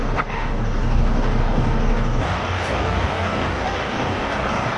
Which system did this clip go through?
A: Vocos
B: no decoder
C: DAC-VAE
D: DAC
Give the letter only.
D